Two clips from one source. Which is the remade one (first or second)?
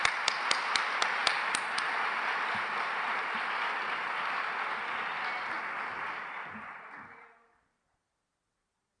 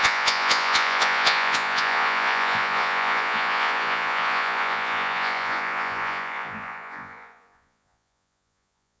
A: second